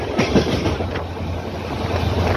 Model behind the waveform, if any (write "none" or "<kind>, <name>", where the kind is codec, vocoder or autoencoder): none